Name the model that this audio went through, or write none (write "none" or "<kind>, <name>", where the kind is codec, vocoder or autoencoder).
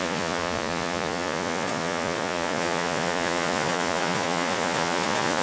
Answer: vocoder, Vocos